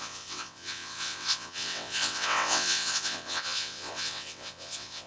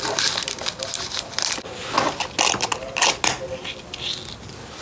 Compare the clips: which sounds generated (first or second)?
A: first